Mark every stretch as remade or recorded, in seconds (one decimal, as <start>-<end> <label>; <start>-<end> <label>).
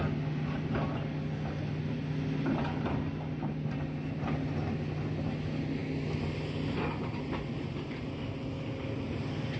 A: 0.0-9.6 recorded